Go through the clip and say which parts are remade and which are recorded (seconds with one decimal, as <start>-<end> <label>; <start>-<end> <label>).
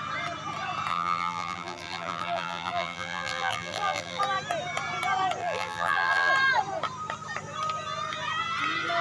0.0-0.9 recorded; 0.9-4.2 remade; 4.2-5.4 recorded; 5.4-6.3 remade; 6.3-9.0 recorded